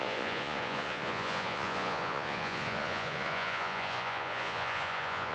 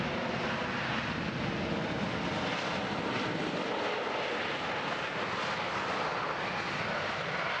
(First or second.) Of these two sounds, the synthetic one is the first